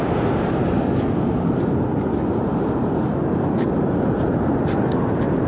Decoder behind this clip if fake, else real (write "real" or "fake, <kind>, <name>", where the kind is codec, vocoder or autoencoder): real